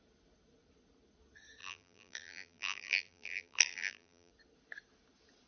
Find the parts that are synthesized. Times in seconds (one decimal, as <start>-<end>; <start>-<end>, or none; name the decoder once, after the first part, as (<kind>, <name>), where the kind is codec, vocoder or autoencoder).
1.6-4.3 (vocoder, BigVGAN v2)